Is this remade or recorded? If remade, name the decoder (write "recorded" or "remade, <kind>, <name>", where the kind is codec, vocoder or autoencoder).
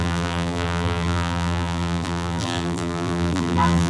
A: remade, vocoder, BigVGAN v2